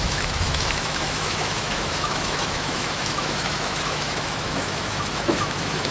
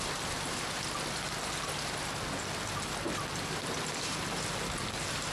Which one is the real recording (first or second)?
second